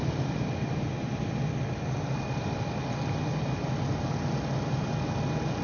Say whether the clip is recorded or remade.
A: recorded